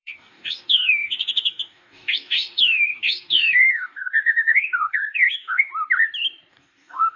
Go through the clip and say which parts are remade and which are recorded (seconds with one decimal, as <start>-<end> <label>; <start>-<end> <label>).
0.0-5.7 remade; 5.7-6.5 recorded; 6.5-7.2 remade